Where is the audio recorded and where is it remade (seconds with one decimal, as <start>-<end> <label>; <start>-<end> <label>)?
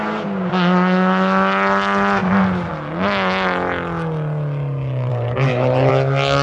0.0-2.2 recorded; 2.2-2.7 remade; 2.7-5.1 recorded; 5.1-5.9 remade; 5.9-6.4 recorded